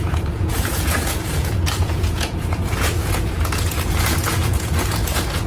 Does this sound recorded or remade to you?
remade